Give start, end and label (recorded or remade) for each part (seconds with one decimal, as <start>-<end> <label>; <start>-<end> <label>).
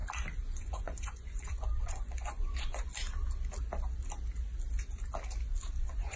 0.0-0.6 recorded; 0.6-2.9 remade; 2.9-5.8 recorded; 5.8-6.2 remade